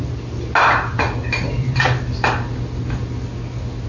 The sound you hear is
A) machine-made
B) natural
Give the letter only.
B